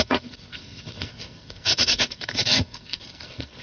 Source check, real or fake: fake